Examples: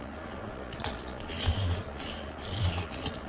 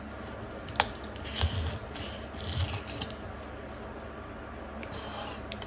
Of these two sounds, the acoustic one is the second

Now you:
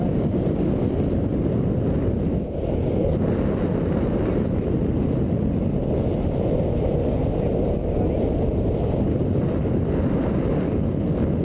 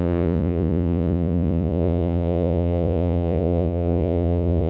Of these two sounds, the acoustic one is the first